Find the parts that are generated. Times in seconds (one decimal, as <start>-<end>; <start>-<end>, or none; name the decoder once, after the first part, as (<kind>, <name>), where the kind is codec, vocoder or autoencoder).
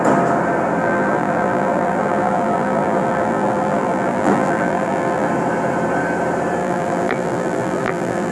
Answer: 0.8-5.3 (vocoder, BigVGAN v2); 6.6-8.3